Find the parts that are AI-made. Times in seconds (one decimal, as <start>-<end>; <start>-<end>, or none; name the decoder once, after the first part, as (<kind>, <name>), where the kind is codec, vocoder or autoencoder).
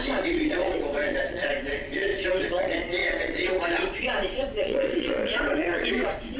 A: 0.0-6.4 (vocoder, Vocos)